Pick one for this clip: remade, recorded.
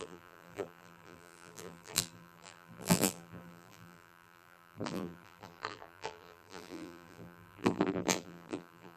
remade